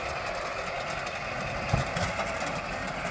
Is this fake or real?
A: real